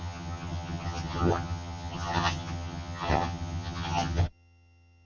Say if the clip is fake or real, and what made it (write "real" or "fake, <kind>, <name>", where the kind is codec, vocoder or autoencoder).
fake, vocoder, HiFi-GAN